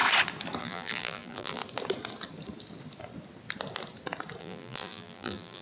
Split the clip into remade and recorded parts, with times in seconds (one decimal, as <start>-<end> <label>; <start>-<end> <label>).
0.0-0.6 recorded; 0.6-1.6 remade; 1.6-4.4 recorded; 4.4-5.6 remade